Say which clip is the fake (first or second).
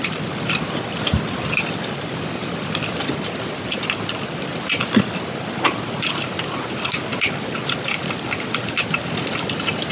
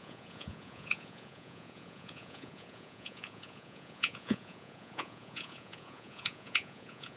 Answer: second